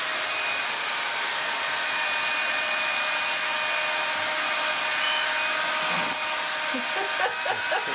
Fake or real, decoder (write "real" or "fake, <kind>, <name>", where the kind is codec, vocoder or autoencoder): real